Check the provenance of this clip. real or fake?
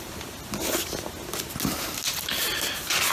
real